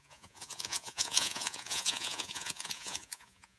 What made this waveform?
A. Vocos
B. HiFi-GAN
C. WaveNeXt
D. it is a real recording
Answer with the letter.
A